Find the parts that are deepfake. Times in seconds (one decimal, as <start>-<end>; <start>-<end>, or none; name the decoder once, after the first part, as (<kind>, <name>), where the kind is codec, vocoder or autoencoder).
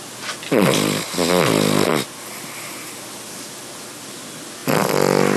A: none